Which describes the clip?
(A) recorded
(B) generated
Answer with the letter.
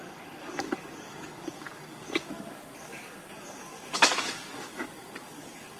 B